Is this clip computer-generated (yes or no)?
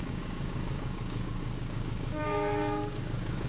yes